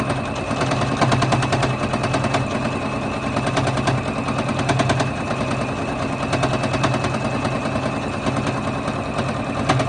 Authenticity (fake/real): real